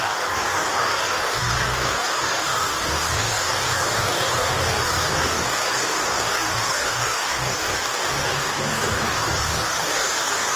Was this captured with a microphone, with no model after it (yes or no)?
no